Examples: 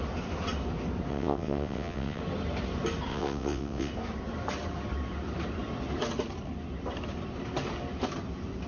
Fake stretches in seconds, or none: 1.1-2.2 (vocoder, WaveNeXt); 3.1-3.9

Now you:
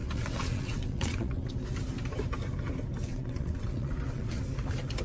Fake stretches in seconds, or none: 0.0-1.5 (vocoder, WaveNeXt); 3.1-4.4

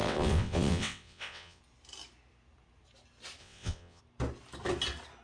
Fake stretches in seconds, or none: 0.0-1.6 (vocoder, WaveNeXt); 3.4-4.0

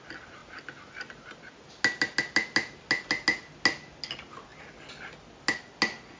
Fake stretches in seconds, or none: none

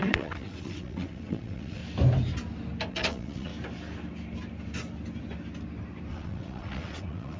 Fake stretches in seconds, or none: 0.0-1.8 (vocoder, WaveNeXt); 2.9-3.5; 6.1-7.4

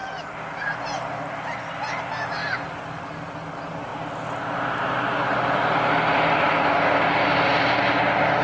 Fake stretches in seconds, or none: none